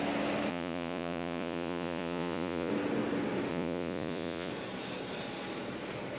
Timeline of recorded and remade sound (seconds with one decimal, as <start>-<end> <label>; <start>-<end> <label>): 0.0-0.5 recorded; 0.5-2.7 remade; 2.7-3.5 recorded; 3.5-4.5 remade; 4.5-6.2 recorded